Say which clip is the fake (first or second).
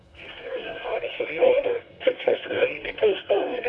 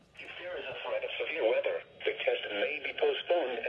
first